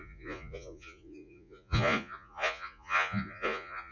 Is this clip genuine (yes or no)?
no